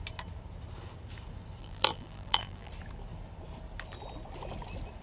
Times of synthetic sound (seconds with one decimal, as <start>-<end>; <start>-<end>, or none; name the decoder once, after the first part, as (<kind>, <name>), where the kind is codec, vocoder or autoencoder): 1.6-2.7 (vocoder, BigVGAN v2)